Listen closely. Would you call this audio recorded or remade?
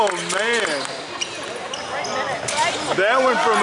recorded